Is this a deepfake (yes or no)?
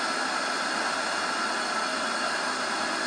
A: no